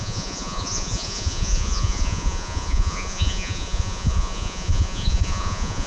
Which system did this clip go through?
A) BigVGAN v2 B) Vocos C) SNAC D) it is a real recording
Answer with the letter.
B